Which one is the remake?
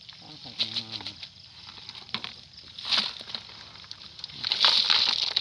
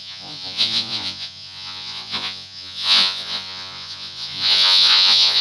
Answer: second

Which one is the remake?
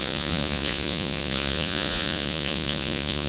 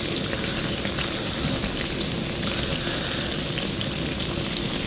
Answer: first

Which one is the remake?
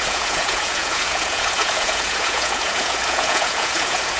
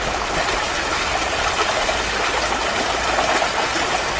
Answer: first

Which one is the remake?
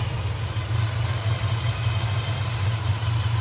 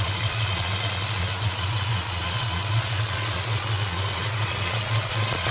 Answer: second